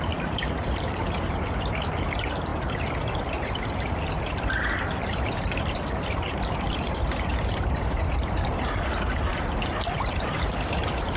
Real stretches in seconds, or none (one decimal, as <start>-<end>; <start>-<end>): none